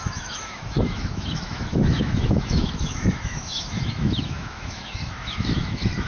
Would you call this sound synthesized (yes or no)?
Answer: yes